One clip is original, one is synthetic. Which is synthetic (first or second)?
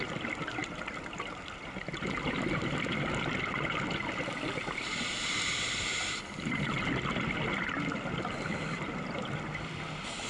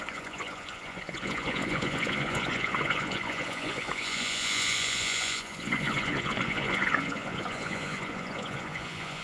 second